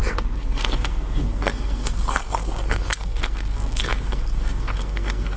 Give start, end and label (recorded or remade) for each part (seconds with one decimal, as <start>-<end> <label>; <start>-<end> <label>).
0.0-5.4 remade